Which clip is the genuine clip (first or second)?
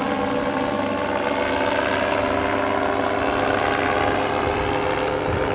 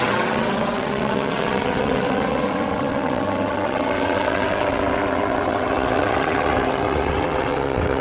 first